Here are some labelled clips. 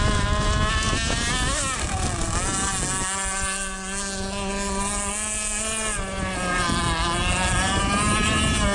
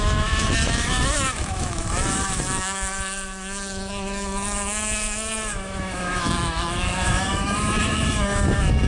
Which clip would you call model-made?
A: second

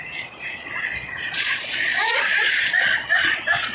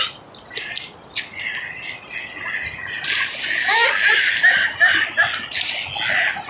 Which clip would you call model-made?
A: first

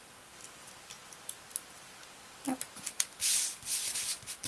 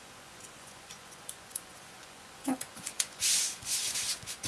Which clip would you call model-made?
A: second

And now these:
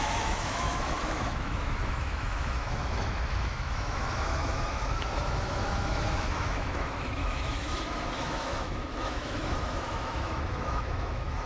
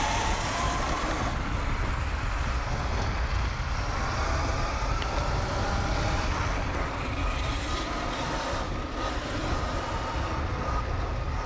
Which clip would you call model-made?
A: first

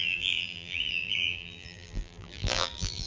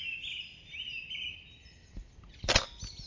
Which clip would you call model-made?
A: first